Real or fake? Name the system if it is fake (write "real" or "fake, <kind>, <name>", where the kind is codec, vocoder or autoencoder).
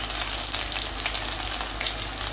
real